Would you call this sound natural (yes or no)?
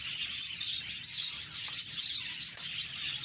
yes